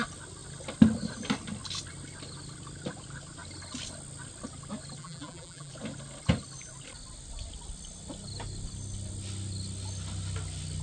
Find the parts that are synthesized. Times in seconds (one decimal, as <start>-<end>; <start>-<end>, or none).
5.0-5.7